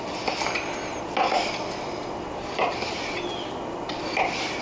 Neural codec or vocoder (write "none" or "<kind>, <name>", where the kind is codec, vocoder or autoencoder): none